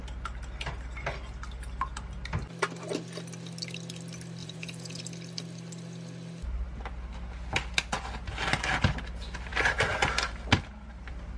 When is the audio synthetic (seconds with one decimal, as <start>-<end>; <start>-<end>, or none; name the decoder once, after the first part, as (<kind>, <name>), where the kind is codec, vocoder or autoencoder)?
4.4-5.0 (vocoder, Vocos)